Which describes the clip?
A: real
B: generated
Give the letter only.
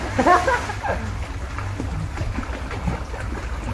A